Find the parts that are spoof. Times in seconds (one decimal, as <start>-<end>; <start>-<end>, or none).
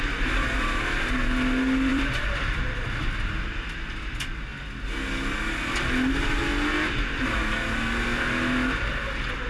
1.9-3.1